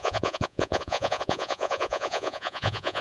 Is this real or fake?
fake